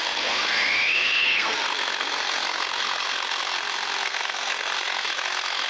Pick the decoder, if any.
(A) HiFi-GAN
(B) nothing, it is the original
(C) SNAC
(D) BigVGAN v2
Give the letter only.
C